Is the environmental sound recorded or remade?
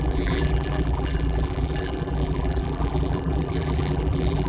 remade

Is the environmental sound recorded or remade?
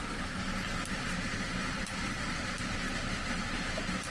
remade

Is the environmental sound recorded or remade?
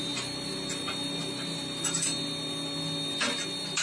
recorded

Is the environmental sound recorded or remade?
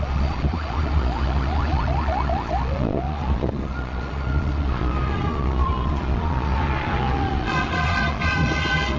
remade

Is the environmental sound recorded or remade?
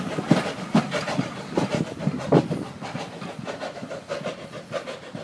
recorded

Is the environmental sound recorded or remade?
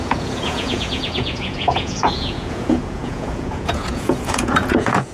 remade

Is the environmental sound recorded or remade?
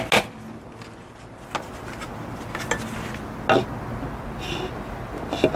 recorded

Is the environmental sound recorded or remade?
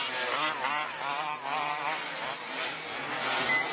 recorded